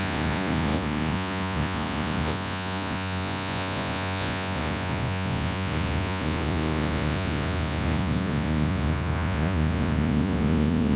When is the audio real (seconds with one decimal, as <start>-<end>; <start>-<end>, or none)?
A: none